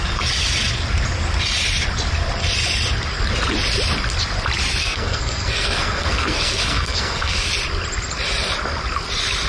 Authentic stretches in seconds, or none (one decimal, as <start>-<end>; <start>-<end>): 0.0-4.8; 7.5-9.5